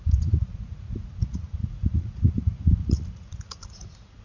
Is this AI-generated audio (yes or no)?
yes